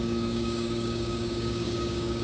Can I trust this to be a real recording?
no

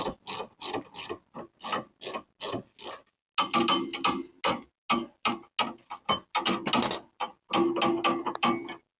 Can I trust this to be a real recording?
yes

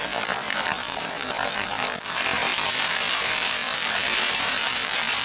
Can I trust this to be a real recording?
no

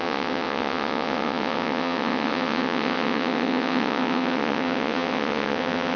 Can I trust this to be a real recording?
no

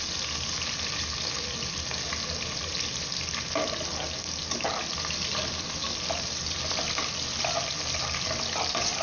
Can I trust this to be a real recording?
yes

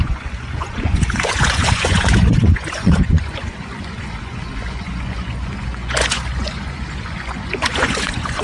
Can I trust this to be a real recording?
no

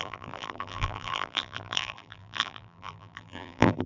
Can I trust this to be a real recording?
no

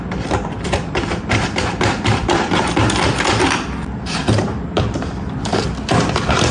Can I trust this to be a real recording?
no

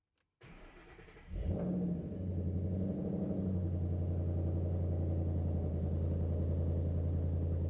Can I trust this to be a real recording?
yes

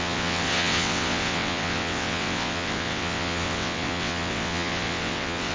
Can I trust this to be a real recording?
no